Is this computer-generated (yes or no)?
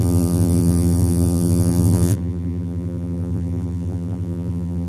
yes